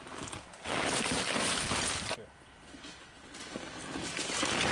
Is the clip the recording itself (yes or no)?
yes